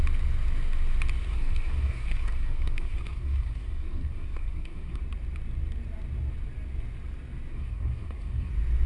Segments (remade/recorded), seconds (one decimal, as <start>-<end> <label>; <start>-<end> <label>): 0.0-1.2 recorded; 1.2-5.0 remade; 5.0-7.5 recorded; 7.5-8.5 remade; 8.5-8.9 recorded